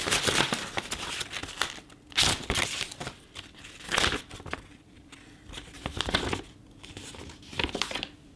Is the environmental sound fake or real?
real